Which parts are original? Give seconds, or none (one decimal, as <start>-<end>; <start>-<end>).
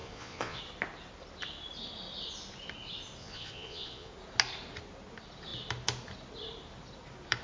0.6-3.2; 4.1-7.4